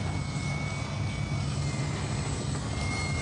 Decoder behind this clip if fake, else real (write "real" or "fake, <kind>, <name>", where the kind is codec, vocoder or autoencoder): real